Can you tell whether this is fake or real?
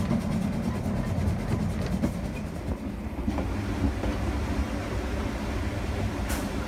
real